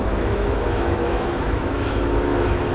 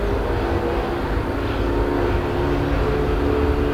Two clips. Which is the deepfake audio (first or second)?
first